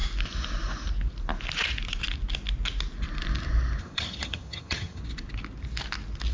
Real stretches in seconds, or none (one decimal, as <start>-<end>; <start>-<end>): 0.0-3.8; 5.0-6.3